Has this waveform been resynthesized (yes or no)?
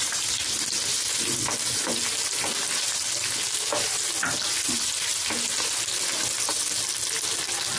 no